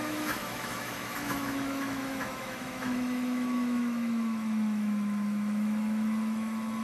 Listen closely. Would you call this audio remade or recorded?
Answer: remade